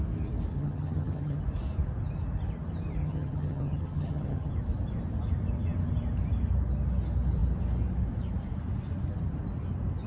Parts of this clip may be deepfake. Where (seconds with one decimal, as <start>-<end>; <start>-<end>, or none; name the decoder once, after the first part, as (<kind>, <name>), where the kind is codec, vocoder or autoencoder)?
0.5-1.4 (vocoder, HiFi-GAN); 3.0-4.5